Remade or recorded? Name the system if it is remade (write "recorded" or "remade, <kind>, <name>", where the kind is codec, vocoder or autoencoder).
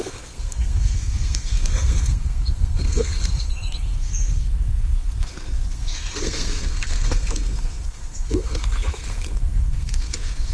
remade, codec, SNAC